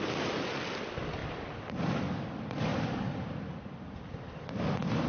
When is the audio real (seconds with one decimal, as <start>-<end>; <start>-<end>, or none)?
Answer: none